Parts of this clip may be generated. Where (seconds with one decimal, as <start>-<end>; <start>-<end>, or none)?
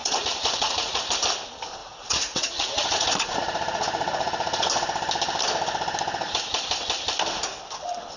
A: 0.0-1.0; 1.8-4.7